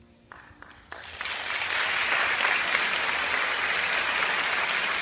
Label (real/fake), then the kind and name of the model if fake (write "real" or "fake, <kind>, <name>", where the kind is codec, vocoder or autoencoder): real